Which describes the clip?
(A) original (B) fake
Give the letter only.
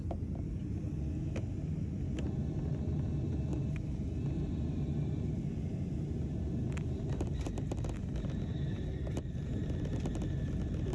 A